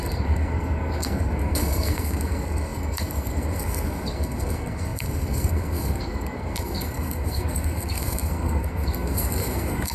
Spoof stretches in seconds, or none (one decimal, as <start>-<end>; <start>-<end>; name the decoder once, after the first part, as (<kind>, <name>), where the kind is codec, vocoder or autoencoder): 0.0-9.9 (codec, SNAC)